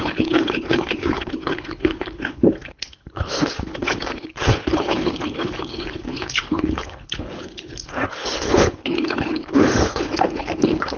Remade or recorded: remade